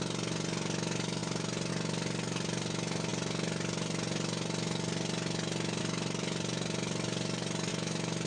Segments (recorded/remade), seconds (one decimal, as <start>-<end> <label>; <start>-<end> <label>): 0.0-7.7 recorded; 7.7-8.3 remade